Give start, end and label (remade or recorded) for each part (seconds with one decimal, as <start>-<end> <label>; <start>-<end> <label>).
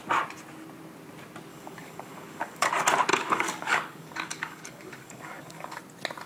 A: 0.0-1.5 recorded; 1.5-2.7 remade; 2.7-3.1 recorded; 3.1-5.8 remade; 5.8-6.3 recorded